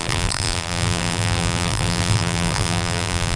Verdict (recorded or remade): remade